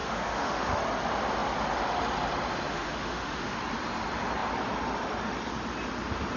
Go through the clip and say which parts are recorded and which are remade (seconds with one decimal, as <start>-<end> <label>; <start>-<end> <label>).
0.0-0.8 remade; 0.8-2.7 recorded; 2.7-3.6 remade; 3.6-6.4 recorded

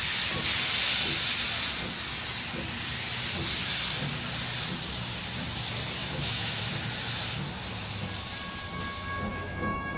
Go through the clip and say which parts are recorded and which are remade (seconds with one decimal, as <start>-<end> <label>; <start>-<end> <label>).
0.0-6.0 recorded; 6.0-6.6 remade; 6.6-9.3 recorded; 9.3-10.0 remade

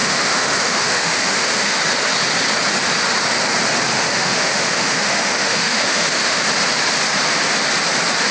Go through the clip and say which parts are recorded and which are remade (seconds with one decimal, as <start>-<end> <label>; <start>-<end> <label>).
0.0-1.8 remade; 1.8-3.9 recorded; 3.9-6.4 remade; 6.4-8.3 recorded

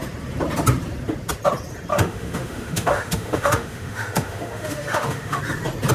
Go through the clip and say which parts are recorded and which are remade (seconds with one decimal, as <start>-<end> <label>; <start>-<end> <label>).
0.0-1.9 recorded; 1.9-5.4 remade; 5.4-5.9 recorded

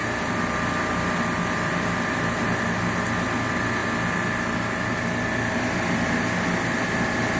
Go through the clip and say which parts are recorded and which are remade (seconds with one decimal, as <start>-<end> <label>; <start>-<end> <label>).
0.0-7.4 recorded

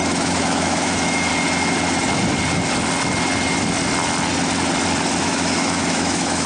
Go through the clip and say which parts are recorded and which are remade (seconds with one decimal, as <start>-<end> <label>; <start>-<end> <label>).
0.0-1.3 remade; 1.3-5.2 recorded; 5.2-6.5 remade